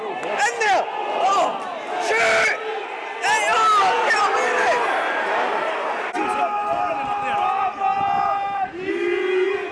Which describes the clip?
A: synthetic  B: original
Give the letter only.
B